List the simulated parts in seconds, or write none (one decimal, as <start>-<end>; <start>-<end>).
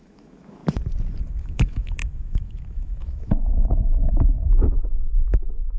0.0-0.6; 1.4-5.8